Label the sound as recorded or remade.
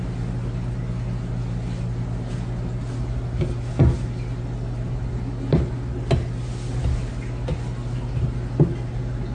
recorded